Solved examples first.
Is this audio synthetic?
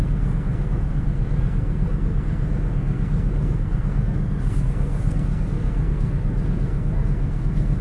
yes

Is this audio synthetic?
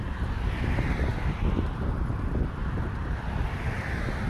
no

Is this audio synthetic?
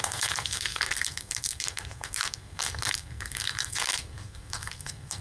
yes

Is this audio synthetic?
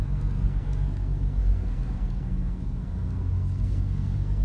yes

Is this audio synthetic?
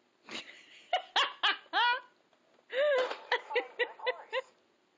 no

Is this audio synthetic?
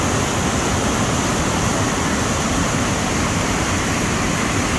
no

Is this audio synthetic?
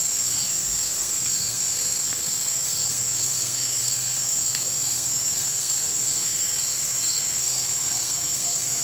yes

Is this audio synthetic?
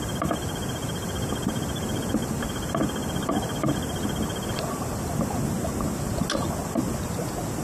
no